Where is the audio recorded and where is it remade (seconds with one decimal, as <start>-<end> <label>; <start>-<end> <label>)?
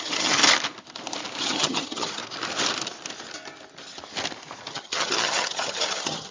0.0-0.4 remade; 0.4-1.4 recorded; 1.4-2.2 remade; 2.2-4.7 recorded; 4.7-6.3 remade